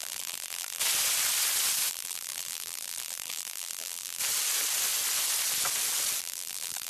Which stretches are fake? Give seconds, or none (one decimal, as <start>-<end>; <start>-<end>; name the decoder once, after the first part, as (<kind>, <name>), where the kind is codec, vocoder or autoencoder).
0.0-0.8 (vocoder, BigVGAN v2); 1.9-4.2; 6.2-6.9